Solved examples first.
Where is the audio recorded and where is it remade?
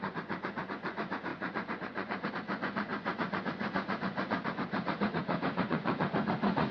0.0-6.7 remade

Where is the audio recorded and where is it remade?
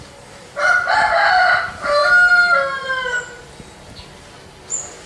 0.0-5.1 recorded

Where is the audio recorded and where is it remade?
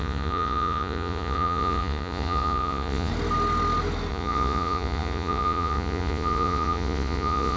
0.0-3.1 remade; 3.1-4.1 recorded; 4.1-7.6 remade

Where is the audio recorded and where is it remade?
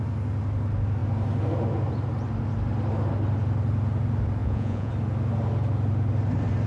0.0-4.4 recorded; 4.4-4.9 remade; 4.9-6.7 recorded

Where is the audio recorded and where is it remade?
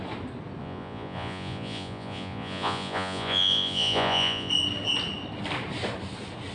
0.0-0.6 recorded; 0.6-4.5 remade; 4.5-6.5 recorded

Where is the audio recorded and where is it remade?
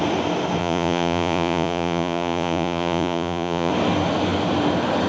0.0-0.6 recorded; 0.6-3.7 remade; 3.7-5.1 recorded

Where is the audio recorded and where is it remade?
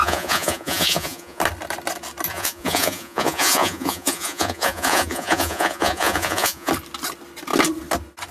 0.0-1.4 remade; 1.4-2.3 recorded; 2.3-6.7 remade; 6.7-8.3 recorded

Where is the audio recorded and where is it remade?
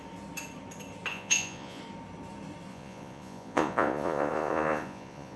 0.0-1.1 recorded; 1.1-1.8 remade; 1.8-2.7 recorded; 2.7-5.4 remade